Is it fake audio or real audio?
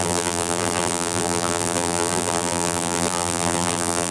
fake